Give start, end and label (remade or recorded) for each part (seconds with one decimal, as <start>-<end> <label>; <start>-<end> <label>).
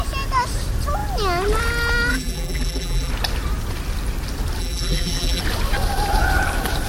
0.0-2.1 recorded; 2.1-3.1 remade; 3.1-4.6 recorded; 4.6-5.4 remade; 5.4-6.9 recorded